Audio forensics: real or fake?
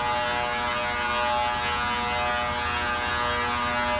real